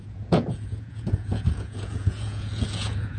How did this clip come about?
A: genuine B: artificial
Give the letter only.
B